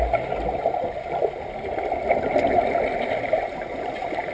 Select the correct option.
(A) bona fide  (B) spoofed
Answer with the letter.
A